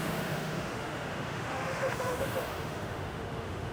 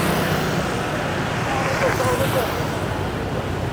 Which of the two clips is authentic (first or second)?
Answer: second